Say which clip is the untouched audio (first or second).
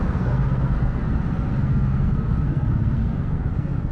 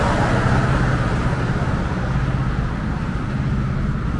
second